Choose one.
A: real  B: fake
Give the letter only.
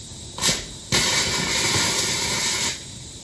B